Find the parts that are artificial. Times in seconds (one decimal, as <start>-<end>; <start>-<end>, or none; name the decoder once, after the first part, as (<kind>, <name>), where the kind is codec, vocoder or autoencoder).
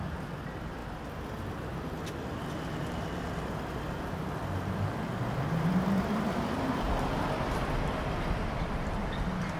none